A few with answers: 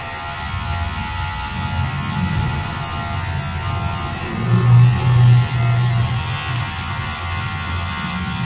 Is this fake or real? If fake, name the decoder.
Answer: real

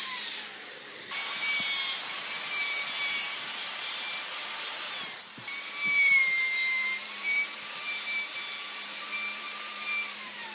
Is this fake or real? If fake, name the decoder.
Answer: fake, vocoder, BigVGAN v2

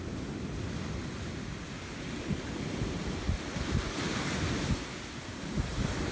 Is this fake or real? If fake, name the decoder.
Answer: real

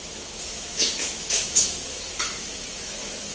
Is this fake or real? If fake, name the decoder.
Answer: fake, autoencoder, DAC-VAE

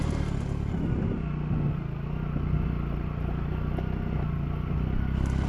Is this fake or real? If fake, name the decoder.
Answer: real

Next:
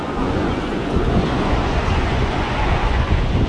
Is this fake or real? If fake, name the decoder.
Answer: fake, vocoder, Vocos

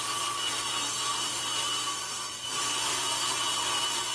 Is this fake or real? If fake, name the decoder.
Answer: real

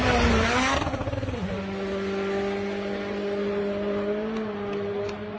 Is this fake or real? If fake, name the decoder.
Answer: real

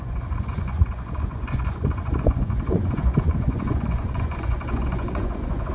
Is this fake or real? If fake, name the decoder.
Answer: fake, vocoder, Vocos